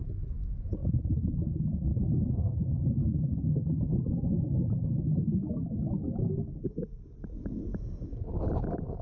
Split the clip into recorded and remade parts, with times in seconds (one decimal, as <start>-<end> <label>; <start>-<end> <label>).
0.0-0.8 recorded; 0.8-1.3 remade; 1.3-1.9 recorded; 1.9-3.2 remade; 3.2-9.0 recorded